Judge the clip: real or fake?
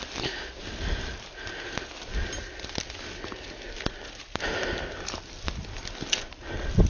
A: real